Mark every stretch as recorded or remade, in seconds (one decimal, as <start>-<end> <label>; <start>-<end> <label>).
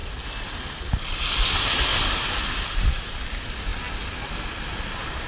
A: 0.0-5.3 recorded